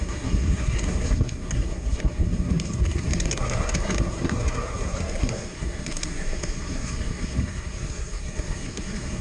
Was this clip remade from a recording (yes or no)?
yes